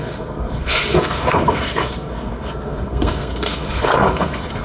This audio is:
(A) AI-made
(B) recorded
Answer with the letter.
A